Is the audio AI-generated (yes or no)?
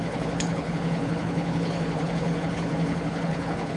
yes